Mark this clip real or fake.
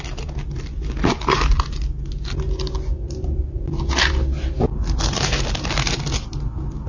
real